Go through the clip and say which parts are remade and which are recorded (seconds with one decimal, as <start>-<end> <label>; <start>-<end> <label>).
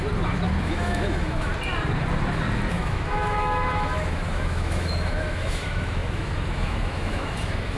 0.0-0.6 recorded; 0.6-1.5 remade; 1.5-2.7 recorded; 2.7-7.8 remade